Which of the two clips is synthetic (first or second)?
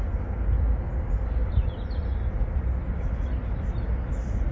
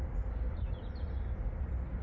second